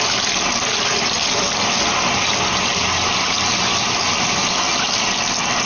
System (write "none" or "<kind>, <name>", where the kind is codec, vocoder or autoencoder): none